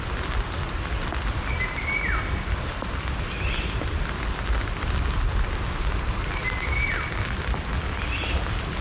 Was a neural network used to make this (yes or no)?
no